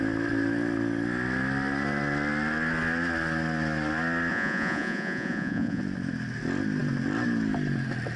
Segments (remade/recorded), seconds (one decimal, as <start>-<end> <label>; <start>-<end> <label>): 0.0-4.3 recorded; 4.3-5.8 remade; 5.8-8.2 recorded